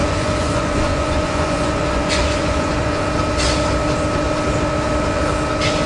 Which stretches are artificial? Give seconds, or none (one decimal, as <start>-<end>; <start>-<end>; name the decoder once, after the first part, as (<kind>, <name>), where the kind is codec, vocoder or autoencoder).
0.0-3.0 (vocoder, Vocos)